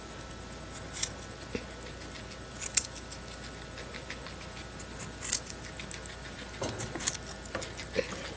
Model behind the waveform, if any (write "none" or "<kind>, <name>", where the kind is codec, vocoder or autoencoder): none